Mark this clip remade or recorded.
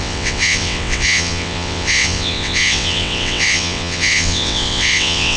remade